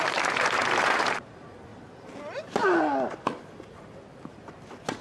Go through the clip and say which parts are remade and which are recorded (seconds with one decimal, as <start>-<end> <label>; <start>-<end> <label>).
0.0-1.7 remade; 1.7-4.3 recorded; 4.3-5.0 remade